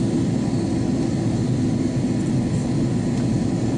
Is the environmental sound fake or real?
real